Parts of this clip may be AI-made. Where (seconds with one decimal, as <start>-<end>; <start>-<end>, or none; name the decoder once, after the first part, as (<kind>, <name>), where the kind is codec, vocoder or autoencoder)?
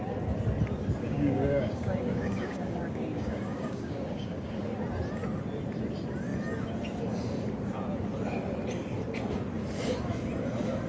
1.0-4.5 (codec, DAC)